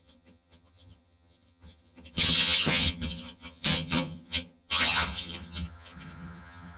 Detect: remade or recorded remade